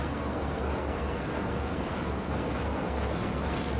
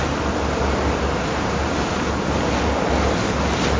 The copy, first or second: first